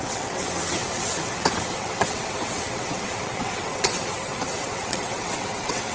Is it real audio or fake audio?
fake